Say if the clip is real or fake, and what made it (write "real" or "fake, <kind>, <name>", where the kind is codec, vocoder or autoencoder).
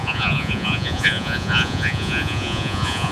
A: fake, vocoder, Vocos